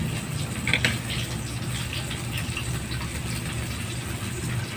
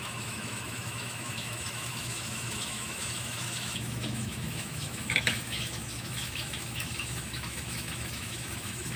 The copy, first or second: second